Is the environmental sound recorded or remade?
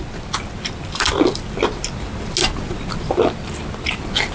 recorded